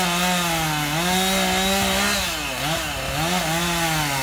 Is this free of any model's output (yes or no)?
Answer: yes